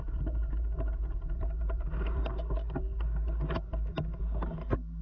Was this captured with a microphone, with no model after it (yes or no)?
yes